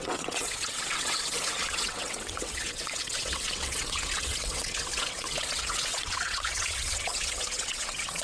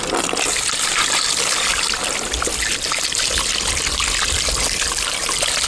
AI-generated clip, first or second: first